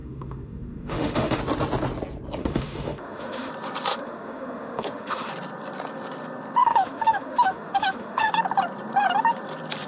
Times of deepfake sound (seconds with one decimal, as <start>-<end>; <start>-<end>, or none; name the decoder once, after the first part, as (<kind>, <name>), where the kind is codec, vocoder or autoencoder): 0.0-1.4 (autoencoder, DAC-VAE); 2.4-3.5; 3.9-5.3; 6.6-8.3